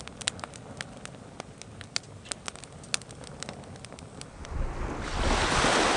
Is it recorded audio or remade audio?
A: recorded